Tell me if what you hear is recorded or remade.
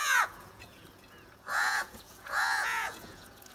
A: remade